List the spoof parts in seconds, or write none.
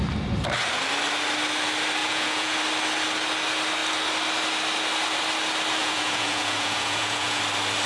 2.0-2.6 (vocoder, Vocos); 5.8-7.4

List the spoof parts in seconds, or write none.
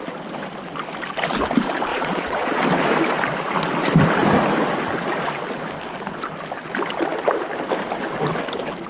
1.9-2.6 (vocoder, Vocos)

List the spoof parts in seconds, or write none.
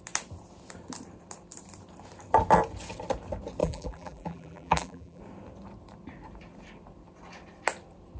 3.6-5.2 (vocoder, BigVGAN v2)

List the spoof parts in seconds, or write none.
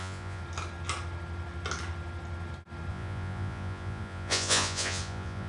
0.0-0.4 (vocoder, Vocos); 2.9-5.5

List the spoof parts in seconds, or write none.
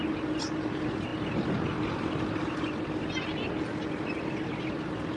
none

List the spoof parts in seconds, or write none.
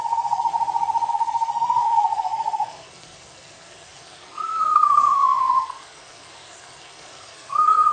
0.0-0.5 (codec, SNAC); 1.1-7.9